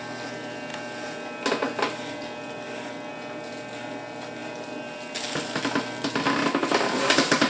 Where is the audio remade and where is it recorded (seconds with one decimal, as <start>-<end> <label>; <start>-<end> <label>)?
0.0-6.6 recorded; 6.6-7.5 remade